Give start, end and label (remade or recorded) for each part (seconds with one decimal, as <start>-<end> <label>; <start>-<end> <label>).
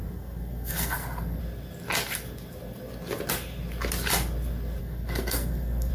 0.0-1.4 remade; 1.4-4.8 recorded; 4.8-5.9 remade